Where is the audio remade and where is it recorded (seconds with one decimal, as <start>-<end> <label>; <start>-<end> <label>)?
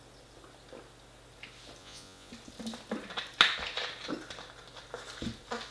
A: 0.0-1.8 recorded; 1.8-2.3 remade; 2.3-5.7 recorded